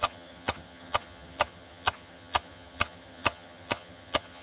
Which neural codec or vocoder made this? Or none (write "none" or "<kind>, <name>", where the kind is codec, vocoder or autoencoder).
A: vocoder, HiFi-GAN